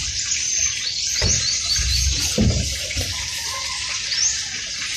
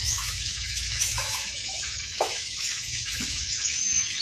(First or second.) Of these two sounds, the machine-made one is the second